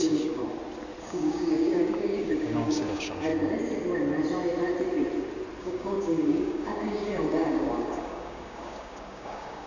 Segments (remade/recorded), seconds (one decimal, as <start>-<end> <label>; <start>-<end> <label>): 0.0-0.4 remade; 0.4-1.0 recorded; 1.0-3.3 remade; 3.3-5.6 recorded; 5.6-9.7 remade